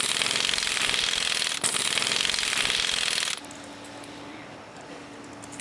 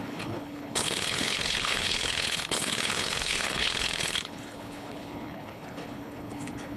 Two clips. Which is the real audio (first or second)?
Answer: first